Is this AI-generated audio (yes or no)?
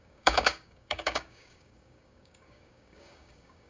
yes